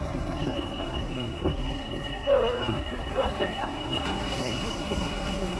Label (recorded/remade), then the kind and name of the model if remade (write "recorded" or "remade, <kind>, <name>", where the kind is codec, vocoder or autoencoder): remade, codec, SNAC